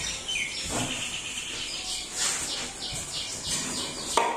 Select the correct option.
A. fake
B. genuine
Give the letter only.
B